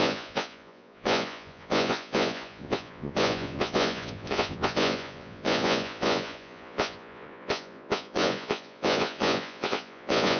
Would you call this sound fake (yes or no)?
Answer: yes